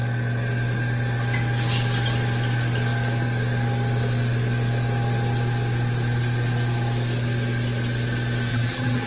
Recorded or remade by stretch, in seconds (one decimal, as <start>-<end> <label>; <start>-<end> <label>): 0.0-8.5 recorded; 8.5-9.1 remade